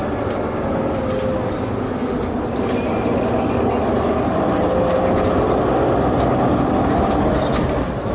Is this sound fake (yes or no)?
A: no